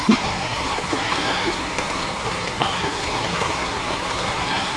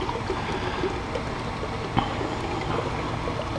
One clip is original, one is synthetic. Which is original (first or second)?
second